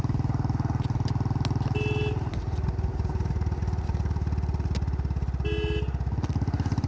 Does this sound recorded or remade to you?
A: recorded